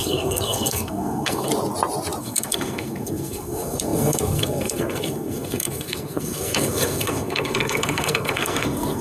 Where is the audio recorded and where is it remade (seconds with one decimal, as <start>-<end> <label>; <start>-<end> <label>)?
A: 0.0-1.5 remade; 1.5-2.2 recorded; 2.2-9.0 remade